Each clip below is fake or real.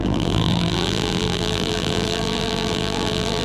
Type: fake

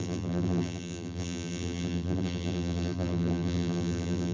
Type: fake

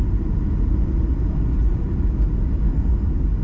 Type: fake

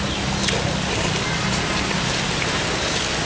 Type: real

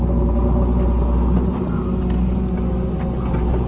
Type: real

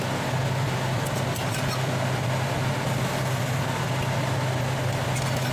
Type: real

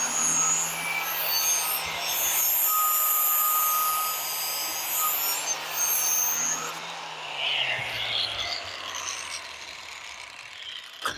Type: real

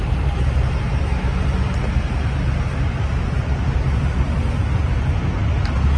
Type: real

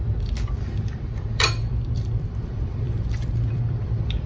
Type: fake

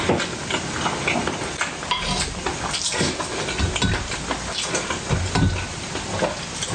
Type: real